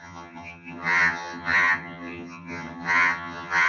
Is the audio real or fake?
fake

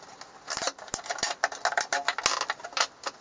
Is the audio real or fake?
real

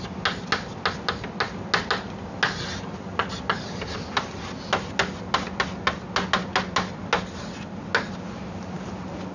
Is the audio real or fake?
real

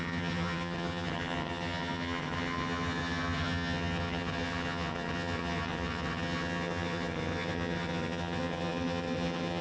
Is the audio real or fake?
fake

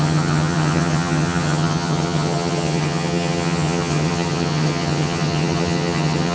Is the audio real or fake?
fake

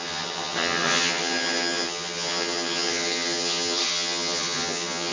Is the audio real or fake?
fake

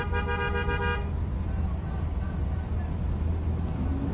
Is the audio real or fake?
real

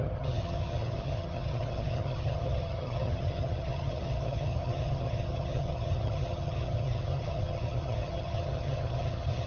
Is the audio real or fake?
fake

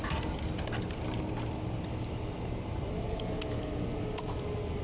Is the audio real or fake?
real